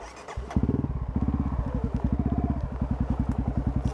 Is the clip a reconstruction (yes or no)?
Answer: no